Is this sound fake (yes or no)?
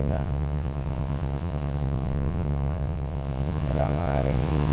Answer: yes